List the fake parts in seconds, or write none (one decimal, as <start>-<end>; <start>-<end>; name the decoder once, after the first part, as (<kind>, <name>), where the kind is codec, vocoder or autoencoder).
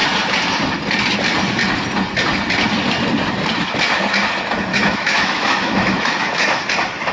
4.7-6.6 (autoencoder, DAC-VAE)